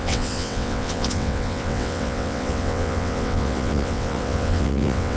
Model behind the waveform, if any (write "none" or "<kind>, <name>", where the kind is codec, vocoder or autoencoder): vocoder, WaveNeXt